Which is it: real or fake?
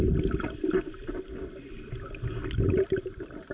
real